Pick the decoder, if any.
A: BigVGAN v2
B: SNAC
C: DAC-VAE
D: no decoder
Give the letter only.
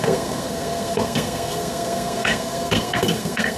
B